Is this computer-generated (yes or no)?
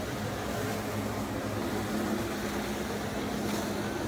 no